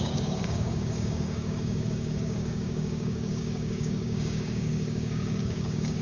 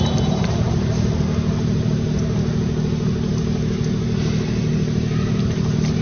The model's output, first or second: first